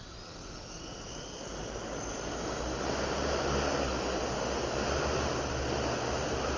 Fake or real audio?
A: real